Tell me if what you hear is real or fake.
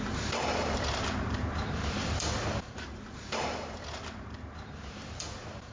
fake